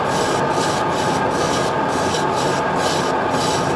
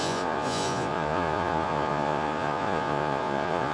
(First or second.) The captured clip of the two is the first